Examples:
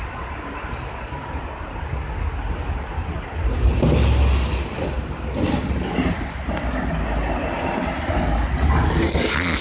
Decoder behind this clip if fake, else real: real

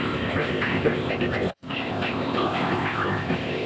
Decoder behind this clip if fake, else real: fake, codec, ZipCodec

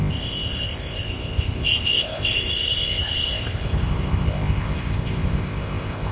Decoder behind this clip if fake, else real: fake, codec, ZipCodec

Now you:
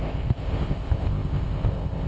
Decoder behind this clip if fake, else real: fake, codec, ZipCodec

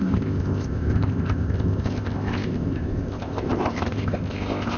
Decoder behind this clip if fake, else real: fake, codec, ZipCodec